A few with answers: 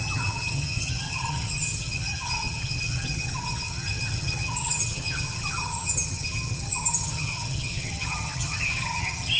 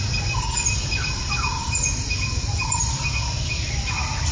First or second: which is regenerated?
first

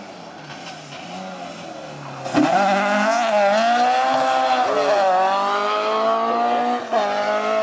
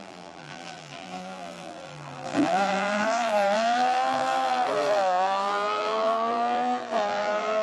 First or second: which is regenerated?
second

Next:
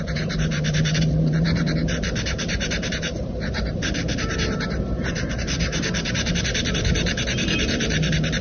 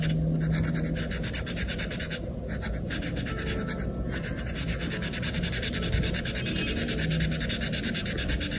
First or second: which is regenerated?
first